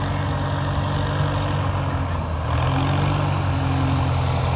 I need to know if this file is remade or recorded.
recorded